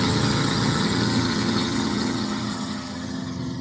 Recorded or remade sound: remade